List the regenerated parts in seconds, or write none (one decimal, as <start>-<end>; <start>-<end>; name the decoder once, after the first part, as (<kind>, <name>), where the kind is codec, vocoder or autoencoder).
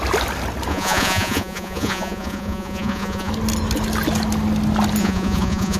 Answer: 0.7-3.3 (vocoder, Vocos); 5.0-5.8